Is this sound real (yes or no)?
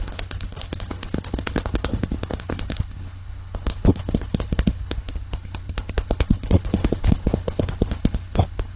no